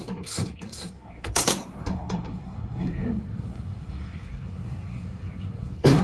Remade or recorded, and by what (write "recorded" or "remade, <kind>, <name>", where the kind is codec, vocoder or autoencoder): remade, codec, SNAC